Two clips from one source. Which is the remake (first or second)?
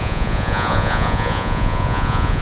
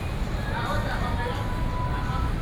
first